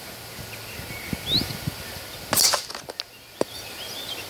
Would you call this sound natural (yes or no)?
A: yes